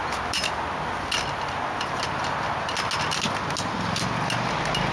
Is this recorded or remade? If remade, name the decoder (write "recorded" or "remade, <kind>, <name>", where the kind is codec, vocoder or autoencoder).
recorded